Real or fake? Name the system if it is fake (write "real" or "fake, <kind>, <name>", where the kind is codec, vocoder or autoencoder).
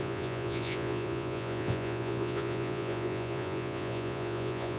fake, vocoder, Vocos